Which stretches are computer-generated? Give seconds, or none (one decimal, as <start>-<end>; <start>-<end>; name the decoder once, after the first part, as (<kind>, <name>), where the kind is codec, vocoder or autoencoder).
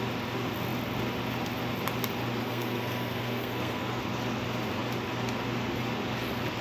2.4-4.0 (codec, SNAC)